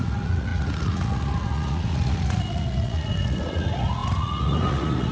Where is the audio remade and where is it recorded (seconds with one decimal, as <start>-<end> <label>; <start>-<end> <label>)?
0.0-5.1 remade